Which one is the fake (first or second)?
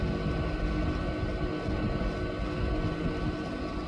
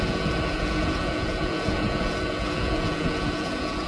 second